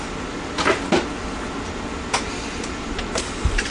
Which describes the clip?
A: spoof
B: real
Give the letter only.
B